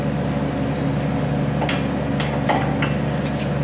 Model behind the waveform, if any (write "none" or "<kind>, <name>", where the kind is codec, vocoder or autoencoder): none